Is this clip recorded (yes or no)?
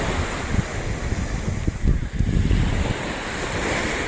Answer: yes